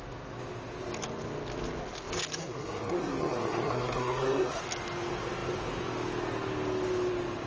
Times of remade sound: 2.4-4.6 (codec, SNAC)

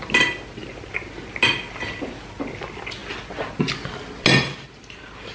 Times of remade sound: none

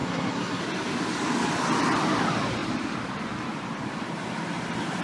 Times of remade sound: 0.0-0.6 (codec, SNAC)